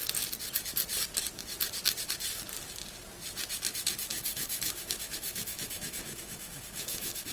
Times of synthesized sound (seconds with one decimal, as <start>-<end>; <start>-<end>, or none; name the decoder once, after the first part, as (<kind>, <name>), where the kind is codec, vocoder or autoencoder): 4.1-7.3 (autoencoder, DAC-VAE)